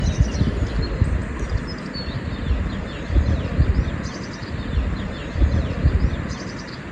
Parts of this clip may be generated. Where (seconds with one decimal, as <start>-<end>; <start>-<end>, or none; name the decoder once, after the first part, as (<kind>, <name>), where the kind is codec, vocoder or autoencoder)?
none